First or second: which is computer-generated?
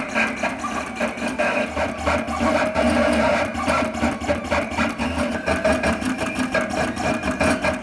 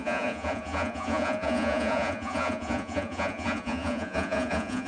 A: second